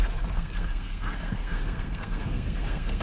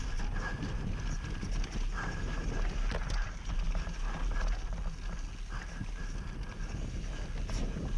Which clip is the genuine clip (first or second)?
second